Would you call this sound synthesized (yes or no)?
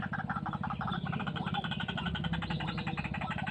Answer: no